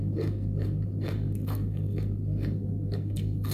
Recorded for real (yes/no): no